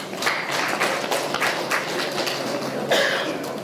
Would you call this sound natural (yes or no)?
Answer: yes